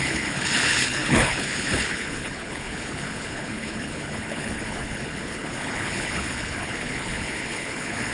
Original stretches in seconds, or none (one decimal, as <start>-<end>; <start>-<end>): none

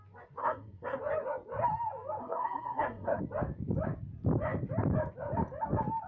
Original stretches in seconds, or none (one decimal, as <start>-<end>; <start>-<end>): 0.0-0.4; 1.0-2.2; 3.2-6.1

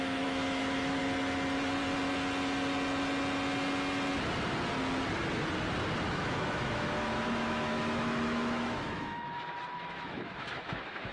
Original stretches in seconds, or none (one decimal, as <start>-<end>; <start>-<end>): 1.0-6.0